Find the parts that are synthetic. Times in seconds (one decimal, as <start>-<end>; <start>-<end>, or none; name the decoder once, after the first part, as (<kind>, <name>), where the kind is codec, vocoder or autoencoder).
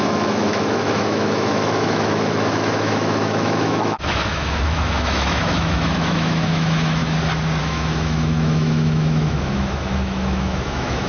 0.0-7.0 (autoencoder, DAC-VAE); 7.6-11.1